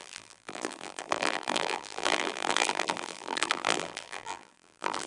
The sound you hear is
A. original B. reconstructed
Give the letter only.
B